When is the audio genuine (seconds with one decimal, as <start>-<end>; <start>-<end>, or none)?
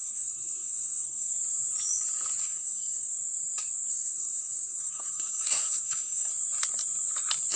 1.3-2.4; 3.1-3.9; 6.3-7.6